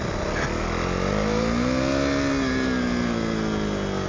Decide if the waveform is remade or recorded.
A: recorded